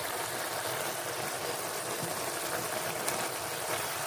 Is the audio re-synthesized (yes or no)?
yes